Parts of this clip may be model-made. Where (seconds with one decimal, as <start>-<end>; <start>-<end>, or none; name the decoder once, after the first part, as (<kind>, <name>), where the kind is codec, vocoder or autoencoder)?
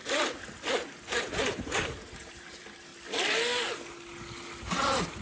1.2-2.9 (vocoder, BigVGAN v2); 4.6-5.2